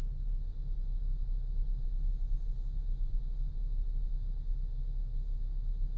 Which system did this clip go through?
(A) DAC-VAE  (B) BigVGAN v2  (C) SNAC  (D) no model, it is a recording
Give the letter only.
D